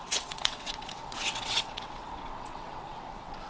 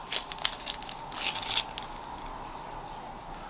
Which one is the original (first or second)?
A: second